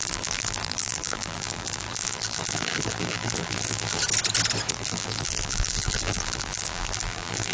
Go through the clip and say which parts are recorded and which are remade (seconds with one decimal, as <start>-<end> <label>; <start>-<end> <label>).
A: 0.0-4.0 remade; 4.0-4.7 recorded; 4.7-7.5 remade